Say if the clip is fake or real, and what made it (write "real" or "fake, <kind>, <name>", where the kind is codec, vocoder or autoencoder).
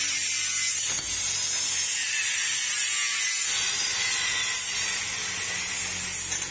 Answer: real